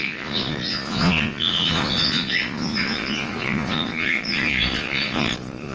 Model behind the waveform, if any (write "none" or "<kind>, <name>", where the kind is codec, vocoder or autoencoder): vocoder, Vocos